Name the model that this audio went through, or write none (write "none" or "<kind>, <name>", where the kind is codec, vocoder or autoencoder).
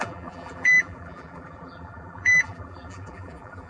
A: vocoder, BigVGAN v2